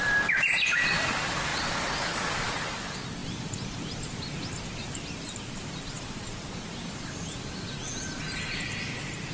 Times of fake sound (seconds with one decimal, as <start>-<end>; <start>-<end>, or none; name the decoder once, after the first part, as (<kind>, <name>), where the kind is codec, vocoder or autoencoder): 0.0-1.5 (vocoder, BigVGAN v2); 2.5-7.8; 8.7-9.3